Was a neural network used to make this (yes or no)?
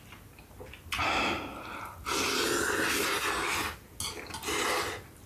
no